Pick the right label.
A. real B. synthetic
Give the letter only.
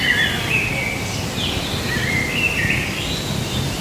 A